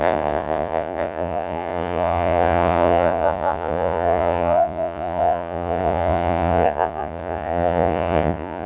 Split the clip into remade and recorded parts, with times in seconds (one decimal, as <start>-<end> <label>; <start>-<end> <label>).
0.0-8.7 remade